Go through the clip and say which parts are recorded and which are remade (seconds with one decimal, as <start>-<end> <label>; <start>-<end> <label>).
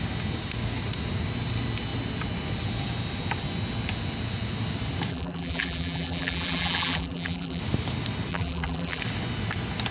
0.0-5.1 recorded; 5.1-7.6 remade; 7.6-8.3 recorded; 8.3-9.0 remade; 9.0-9.9 recorded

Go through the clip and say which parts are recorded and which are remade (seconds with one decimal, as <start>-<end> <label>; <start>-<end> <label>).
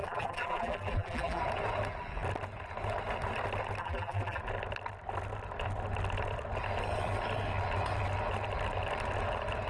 0.0-1.4 remade; 1.4-3.8 recorded; 3.8-4.4 remade; 4.4-9.7 recorded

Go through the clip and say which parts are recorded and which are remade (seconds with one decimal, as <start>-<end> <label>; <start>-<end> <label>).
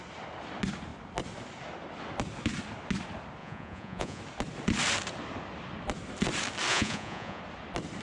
0.0-3.4 recorded; 3.4-4.2 remade; 4.2-6.7 recorded; 6.7-7.4 remade; 7.4-8.0 recorded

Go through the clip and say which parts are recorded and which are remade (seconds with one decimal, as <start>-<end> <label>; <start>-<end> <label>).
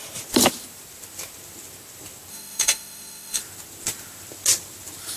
0.0-2.3 recorded; 2.3-3.4 remade; 3.4-5.2 recorded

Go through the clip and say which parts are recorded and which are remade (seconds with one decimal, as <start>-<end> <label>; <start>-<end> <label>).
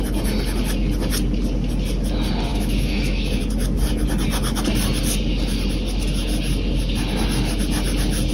0.0-2.5 recorded; 2.5-3.4 remade; 3.4-8.3 recorded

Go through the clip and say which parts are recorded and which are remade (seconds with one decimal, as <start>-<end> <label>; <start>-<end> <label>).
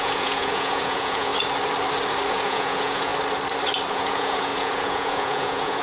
0.0-1.3 remade; 1.3-2.3 recorded; 2.3-3.1 remade; 3.1-3.9 recorded; 3.9-5.8 remade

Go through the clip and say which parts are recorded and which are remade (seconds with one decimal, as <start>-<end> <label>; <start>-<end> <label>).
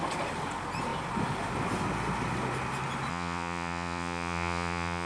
0.0-3.1 recorded; 3.1-5.1 remade